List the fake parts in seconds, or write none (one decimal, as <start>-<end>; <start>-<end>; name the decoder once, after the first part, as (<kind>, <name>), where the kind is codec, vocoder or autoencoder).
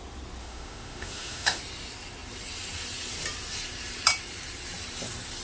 0.4-1.6 (autoencoder, DAC-VAE)